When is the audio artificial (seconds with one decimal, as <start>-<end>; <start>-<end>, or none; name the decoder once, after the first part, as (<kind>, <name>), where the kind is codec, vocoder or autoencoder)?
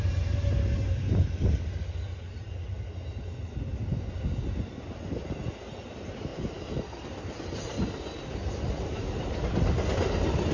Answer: none